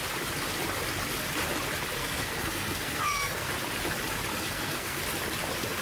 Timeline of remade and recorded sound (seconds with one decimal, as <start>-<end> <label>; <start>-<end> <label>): 0.0-1.9 recorded; 1.9-3.5 remade; 3.5-4.3 recorded; 4.3-5.0 remade; 5.0-5.8 recorded